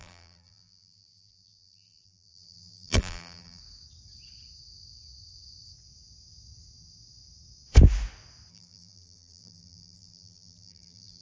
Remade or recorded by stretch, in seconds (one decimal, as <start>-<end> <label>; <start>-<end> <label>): 0.0-3.6 remade; 3.6-8.5 recorded; 8.5-11.2 remade